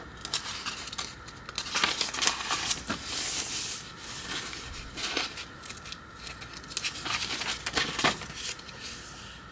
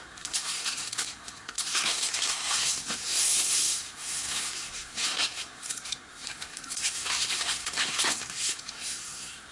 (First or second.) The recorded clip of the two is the first